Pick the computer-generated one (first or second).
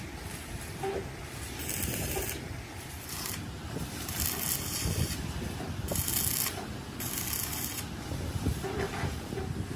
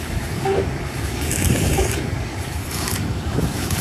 second